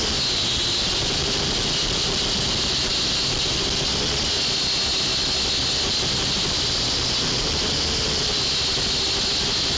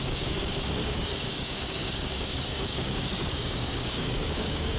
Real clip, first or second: first